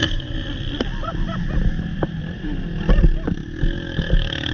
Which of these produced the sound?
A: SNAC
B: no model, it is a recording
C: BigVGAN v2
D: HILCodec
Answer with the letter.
B